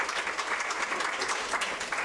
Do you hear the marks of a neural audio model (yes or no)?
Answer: no